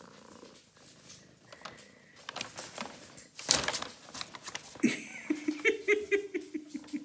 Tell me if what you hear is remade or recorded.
recorded